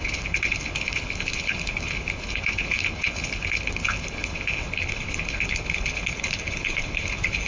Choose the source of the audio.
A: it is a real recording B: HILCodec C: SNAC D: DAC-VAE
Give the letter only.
B